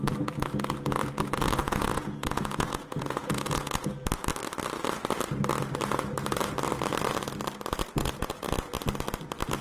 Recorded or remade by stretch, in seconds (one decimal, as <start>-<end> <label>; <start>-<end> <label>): 0.0-1.6 recorded; 1.6-3.9 remade; 3.9-7.9 recorded; 7.9-8.5 remade; 8.5-9.6 recorded